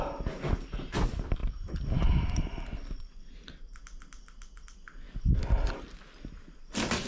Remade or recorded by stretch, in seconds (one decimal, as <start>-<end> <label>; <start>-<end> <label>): 0.0-6.4 recorded; 6.4-7.1 remade